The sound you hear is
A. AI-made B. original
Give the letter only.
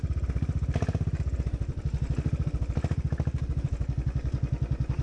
B